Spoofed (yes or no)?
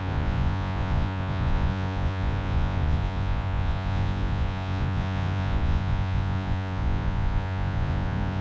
yes